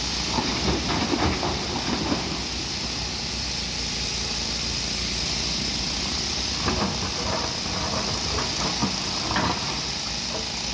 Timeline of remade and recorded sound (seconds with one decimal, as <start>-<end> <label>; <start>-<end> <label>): 0.0-10.7 recorded